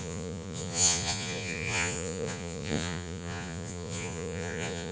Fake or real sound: fake